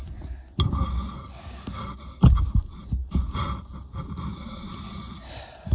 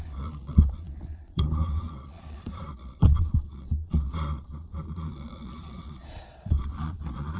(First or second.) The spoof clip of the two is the second